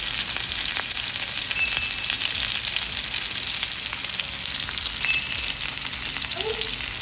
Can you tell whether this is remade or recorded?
recorded